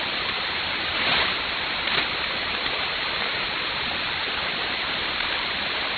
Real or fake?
real